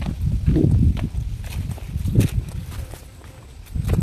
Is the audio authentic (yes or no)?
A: yes